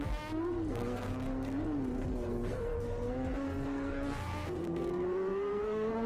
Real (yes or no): no